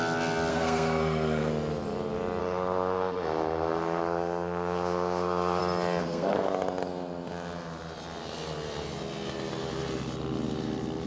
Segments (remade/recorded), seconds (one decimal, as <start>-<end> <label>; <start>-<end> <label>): 0.0-0.5 recorded; 0.5-1.5 remade; 1.5-2.4 recorded; 2.4-5.6 remade; 5.6-6.0 recorded; 6.0-6.5 remade; 6.5-11.1 recorded